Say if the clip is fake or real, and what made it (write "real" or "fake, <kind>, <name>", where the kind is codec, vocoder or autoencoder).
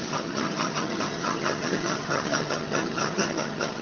fake, vocoder, HiFi-GAN